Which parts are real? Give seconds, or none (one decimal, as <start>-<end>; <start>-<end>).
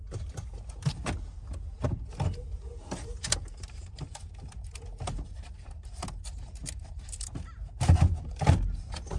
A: 0.0-9.2